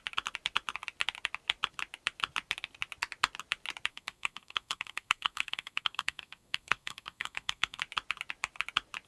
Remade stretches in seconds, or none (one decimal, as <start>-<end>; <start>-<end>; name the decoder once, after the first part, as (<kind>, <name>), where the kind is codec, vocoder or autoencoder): 3.9-7.8 (codec, SNAC)